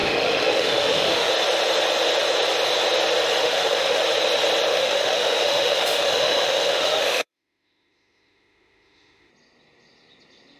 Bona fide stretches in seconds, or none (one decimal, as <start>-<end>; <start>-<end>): 1.3-3.4; 4.0-4.7; 9.3-10.6